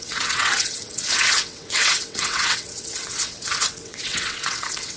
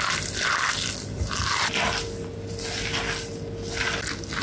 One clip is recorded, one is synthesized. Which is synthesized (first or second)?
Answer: first